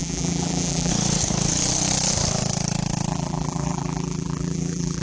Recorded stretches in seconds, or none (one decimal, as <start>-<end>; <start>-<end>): 0.9-3.1